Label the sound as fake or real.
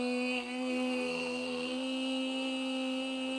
fake